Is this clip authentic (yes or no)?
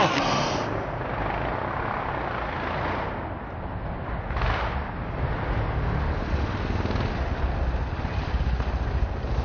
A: yes